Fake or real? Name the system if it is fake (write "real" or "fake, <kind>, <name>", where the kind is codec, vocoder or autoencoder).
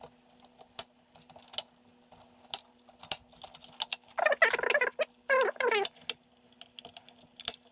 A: real